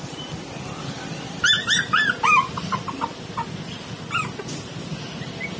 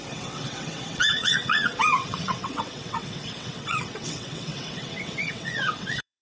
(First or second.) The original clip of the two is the first